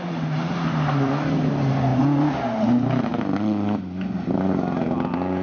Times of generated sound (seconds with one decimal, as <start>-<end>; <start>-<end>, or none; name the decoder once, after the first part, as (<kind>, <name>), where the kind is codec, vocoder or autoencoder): none